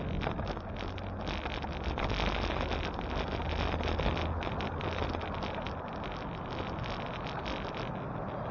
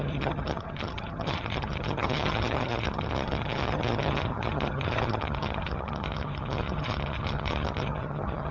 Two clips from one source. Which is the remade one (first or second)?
second